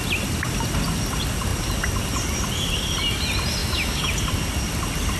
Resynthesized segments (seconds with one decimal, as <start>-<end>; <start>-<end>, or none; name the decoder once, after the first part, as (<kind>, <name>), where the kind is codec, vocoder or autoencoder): 3.6-4.1 (autoencoder, DAC-VAE)